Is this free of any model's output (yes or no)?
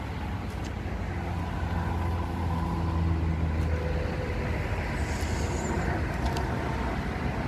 yes